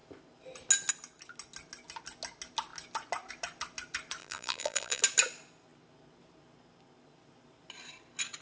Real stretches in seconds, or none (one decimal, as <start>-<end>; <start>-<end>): 0.0-4.2; 5.0-8.4